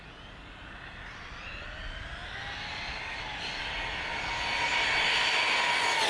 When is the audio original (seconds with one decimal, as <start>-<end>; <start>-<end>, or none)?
0.0-6.1